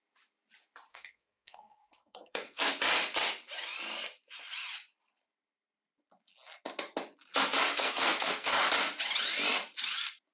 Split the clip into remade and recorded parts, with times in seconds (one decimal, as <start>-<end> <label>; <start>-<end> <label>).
0.0-0.9 recorded; 0.9-2.7 remade; 2.7-7.7 recorded; 7.7-8.6 remade; 8.6-10.3 recorded